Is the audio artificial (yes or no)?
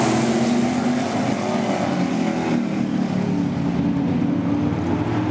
no